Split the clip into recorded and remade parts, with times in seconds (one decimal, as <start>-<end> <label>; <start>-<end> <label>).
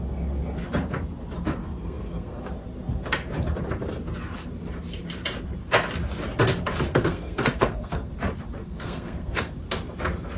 0.0-1.6 recorded; 1.6-2.4 remade; 2.4-6.9 recorded; 6.9-8.1 remade; 8.1-8.6 recorded; 8.6-9.6 remade; 9.6-10.4 recorded